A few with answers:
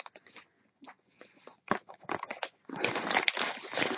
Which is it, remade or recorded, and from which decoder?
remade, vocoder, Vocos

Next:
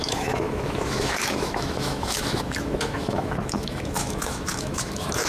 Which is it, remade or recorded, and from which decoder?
remade, autoencoder, DAC-VAE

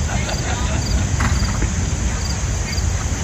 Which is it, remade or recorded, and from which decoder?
recorded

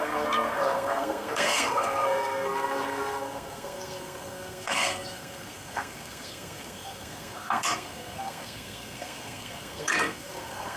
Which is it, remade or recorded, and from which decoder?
remade, codec, SNAC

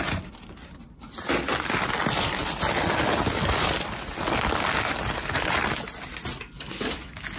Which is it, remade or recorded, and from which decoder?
recorded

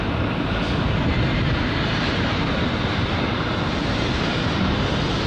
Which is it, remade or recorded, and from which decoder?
remade, vocoder, BigVGAN v2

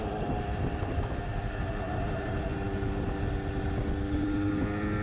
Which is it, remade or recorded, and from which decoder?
recorded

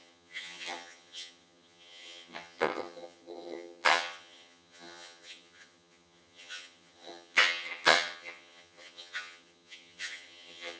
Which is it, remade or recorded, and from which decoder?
remade, vocoder, HiFi-GAN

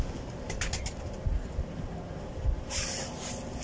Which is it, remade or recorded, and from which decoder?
recorded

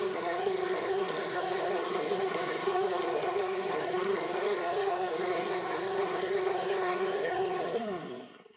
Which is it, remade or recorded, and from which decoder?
remade, codec, SNAC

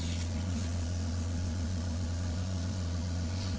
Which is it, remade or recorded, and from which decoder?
remade, vocoder, Vocos